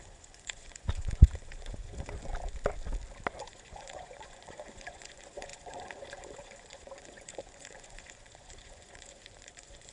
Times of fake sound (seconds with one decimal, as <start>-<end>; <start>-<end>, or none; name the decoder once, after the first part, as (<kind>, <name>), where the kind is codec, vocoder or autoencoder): 0.0-2.3 (vocoder, Vocos); 3.4-9.9